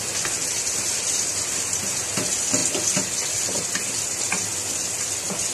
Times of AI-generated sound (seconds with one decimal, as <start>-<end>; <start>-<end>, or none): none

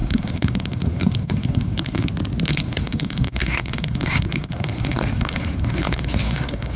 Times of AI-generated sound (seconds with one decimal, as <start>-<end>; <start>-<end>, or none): 0.0-2.1; 2.5-6.8

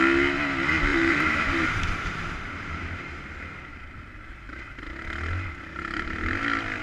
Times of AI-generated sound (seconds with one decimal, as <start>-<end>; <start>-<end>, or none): 0.9-3.1; 3.7-4.7

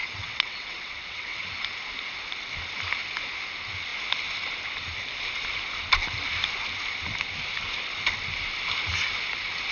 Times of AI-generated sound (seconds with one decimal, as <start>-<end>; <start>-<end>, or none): 0.0-1.4